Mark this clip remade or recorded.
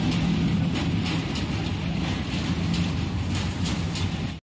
recorded